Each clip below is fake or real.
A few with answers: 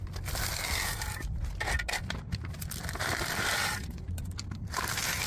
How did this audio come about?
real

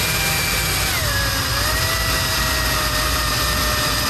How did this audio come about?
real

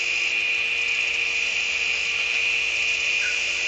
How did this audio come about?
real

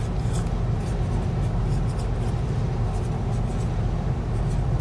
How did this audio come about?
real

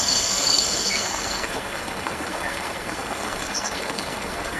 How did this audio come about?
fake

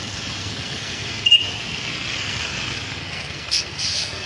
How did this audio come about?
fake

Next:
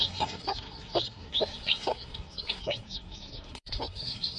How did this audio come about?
fake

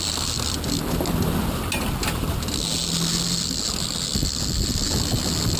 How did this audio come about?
real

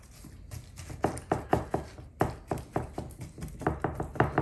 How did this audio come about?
real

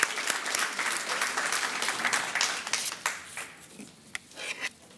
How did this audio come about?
real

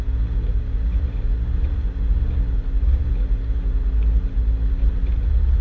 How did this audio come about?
real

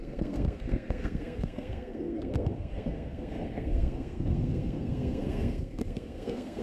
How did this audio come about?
fake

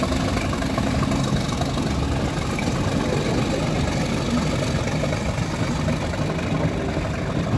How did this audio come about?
real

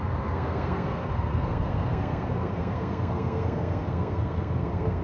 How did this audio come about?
fake